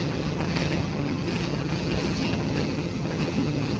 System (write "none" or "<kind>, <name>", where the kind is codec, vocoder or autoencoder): vocoder, HiFi-GAN